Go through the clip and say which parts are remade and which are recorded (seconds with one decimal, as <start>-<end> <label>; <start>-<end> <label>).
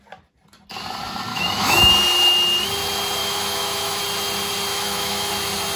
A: 0.0-1.3 recorded; 1.3-1.9 remade; 1.9-3.2 recorded; 3.2-4.0 remade; 4.0-4.7 recorded; 4.7-5.3 remade; 5.3-5.8 recorded